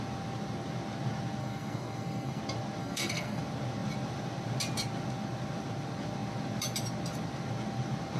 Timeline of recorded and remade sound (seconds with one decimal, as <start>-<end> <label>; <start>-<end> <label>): 0.0-1.4 recorded; 1.4-2.4 remade; 2.4-2.8 recorded; 2.8-3.4 remade; 3.4-8.2 recorded